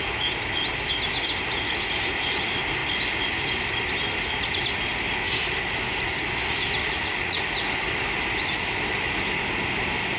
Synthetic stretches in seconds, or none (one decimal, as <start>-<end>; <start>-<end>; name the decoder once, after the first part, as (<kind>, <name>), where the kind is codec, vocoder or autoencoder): 6.8-7.4 (vocoder, Vocos)